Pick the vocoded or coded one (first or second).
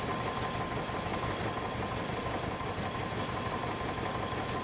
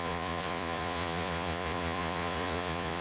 second